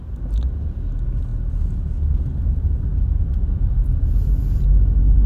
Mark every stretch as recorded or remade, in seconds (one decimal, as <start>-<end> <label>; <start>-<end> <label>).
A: 0.0-5.3 recorded